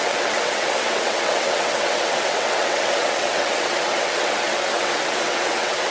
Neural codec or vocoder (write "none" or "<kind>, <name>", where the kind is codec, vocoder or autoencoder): vocoder, WaveNeXt